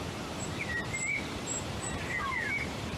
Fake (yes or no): yes